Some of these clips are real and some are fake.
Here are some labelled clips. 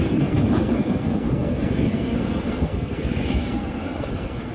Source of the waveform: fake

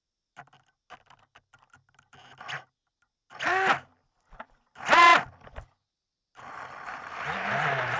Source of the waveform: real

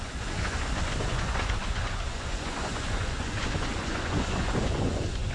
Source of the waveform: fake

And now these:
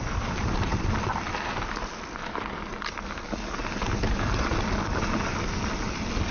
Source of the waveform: real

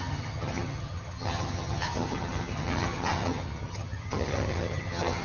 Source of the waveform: fake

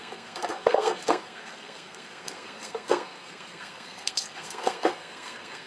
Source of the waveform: fake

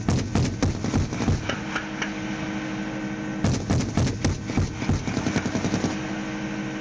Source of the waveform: real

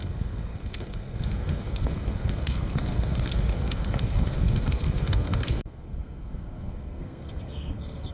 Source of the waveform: fake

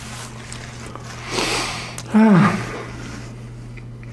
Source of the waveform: real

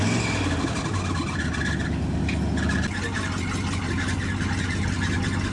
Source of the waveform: real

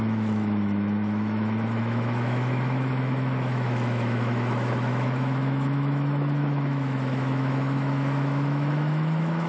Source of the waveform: fake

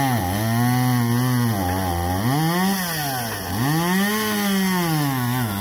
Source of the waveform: real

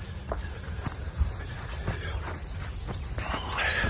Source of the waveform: real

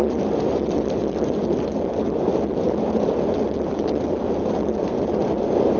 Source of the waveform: real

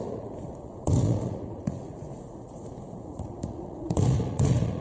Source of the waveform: fake